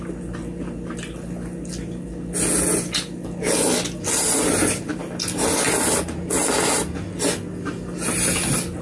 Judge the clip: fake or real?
real